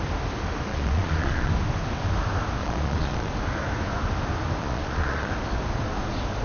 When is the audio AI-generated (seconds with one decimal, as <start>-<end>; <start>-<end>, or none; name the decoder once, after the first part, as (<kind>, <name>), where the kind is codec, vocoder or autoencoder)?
0.7-1.5 (vocoder, Vocos); 2.6-3.3; 4.6-5.3